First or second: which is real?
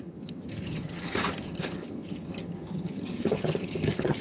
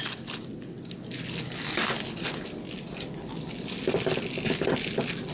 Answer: second